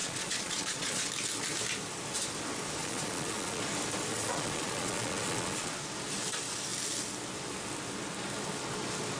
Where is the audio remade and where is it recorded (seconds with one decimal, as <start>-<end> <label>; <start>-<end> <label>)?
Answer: 0.0-1.1 remade; 1.1-2.8 recorded; 2.8-3.6 remade; 3.6-4.1 recorded; 4.1-5.7 remade; 5.7-9.2 recorded